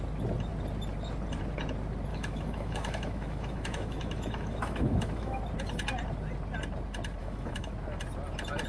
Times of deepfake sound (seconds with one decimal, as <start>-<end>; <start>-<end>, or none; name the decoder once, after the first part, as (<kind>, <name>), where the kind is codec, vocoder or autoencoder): 2.1-5.4 (autoencoder, DAC-VAE); 7.2-7.7